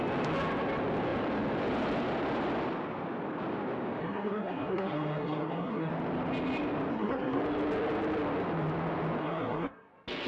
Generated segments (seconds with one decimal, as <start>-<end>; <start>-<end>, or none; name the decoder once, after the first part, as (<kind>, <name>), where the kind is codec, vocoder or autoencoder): 4.0-5.9 (codec, SNAC); 6.9-7.4; 9.2-9.9